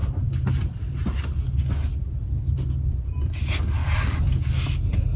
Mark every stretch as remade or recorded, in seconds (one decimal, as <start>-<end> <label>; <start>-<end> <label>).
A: 0.0-5.2 recorded